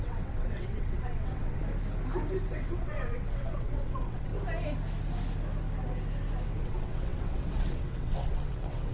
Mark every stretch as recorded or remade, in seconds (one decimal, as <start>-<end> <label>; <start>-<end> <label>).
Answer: 0.0-1.6 remade; 1.6-2.5 recorded; 2.5-4.3 remade; 4.3-6.6 recorded; 6.6-8.9 remade